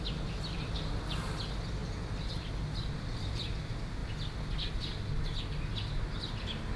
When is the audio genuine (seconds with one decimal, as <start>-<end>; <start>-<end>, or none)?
0.0-6.8